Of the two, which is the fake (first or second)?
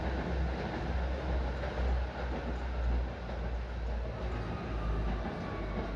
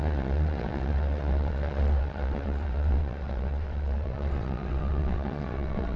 second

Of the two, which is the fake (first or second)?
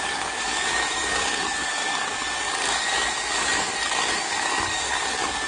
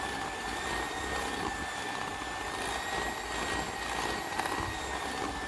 first